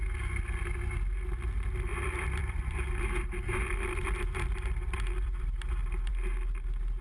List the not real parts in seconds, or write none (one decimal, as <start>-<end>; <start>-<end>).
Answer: 1.9-6.1